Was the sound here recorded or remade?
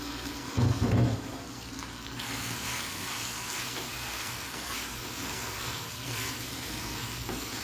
remade